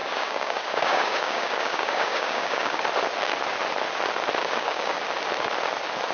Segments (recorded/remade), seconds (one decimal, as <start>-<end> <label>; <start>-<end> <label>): 0.0-2.8 remade; 2.8-4.4 recorded; 4.4-5.0 remade; 5.0-6.1 recorded